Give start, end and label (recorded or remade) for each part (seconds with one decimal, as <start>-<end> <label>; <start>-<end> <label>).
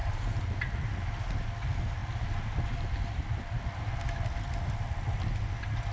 0.0-5.9 recorded